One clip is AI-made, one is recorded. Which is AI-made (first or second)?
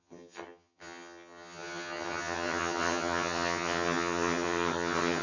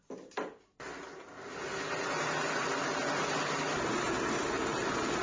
first